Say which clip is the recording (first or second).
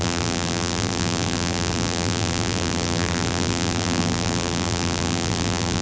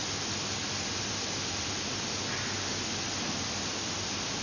second